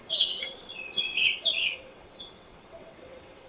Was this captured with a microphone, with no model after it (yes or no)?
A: no